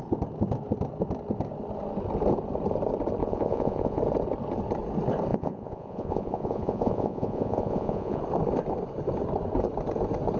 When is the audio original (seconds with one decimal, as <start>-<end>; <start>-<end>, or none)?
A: 0.0-3.2; 4.0-5.3; 8.2-10.4